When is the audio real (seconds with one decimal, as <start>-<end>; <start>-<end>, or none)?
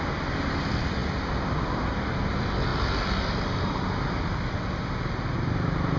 0.0-6.0